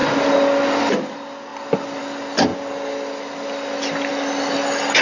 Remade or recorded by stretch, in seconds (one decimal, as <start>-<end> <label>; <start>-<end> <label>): 0.0-5.0 recorded